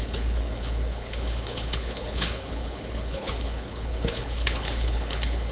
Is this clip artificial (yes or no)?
yes